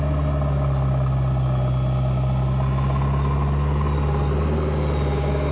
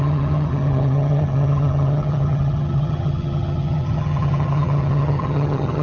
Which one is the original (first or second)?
first